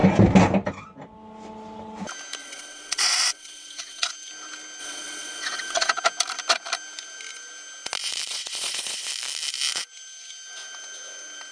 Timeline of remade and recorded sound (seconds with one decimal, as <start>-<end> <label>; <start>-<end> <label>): 0.0-2.4 recorded; 2.4-4.1 remade; 4.1-4.8 recorded; 4.8-5.9 remade; 5.9-8.3 recorded; 8.3-9.1 remade; 9.1-11.5 recorded